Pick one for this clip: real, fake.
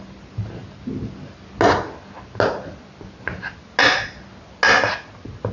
real